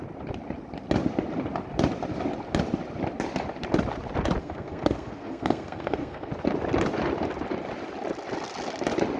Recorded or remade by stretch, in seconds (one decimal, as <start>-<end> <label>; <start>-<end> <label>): 0.0-4.4 recorded; 4.4-6.3 remade; 6.3-9.2 recorded